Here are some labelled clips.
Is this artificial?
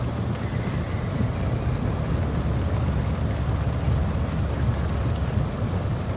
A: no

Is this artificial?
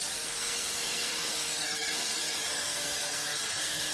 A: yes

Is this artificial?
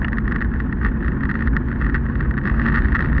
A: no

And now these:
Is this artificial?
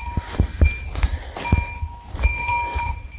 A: yes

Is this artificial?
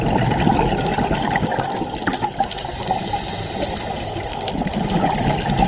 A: no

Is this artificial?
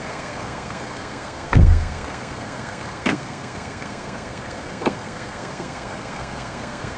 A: yes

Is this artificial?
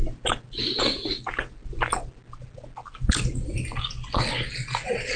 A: no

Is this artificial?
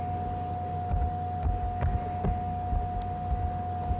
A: no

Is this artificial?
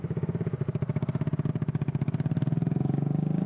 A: no